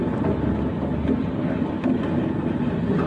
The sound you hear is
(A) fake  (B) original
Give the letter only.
A